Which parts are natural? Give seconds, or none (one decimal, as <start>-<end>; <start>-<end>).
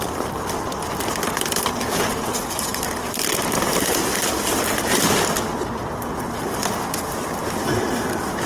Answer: 0.0-2.7; 4.0-8.5